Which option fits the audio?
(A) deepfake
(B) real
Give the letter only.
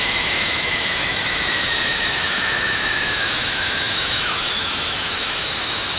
A